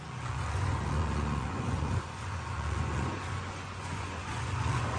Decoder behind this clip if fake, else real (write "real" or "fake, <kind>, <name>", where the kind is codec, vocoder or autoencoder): fake, vocoder, Vocos